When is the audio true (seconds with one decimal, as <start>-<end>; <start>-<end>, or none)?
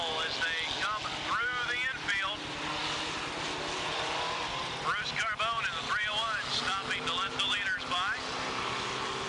0.0-9.3